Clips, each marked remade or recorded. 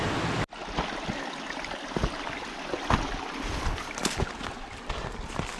recorded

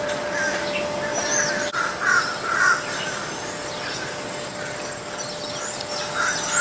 recorded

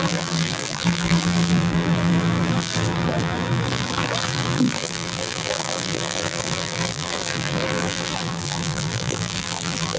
remade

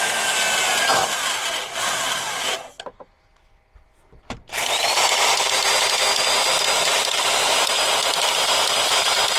recorded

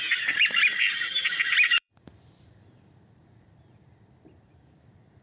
remade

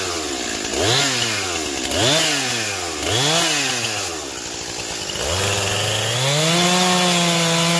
recorded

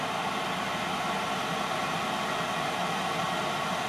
recorded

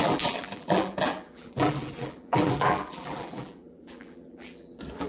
remade